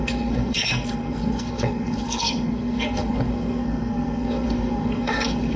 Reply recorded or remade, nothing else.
remade